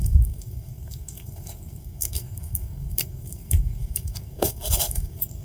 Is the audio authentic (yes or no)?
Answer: no